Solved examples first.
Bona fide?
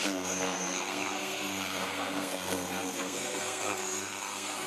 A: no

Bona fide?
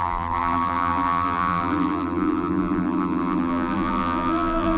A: no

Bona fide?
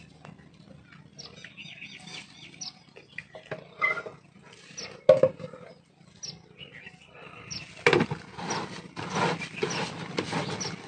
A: yes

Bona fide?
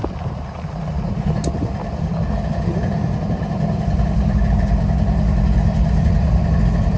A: yes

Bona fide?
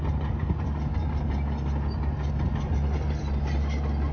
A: yes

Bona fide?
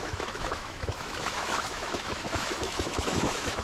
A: no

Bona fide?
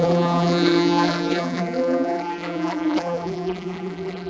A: no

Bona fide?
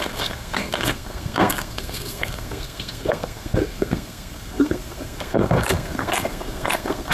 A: no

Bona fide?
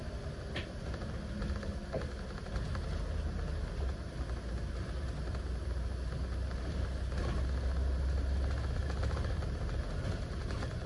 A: yes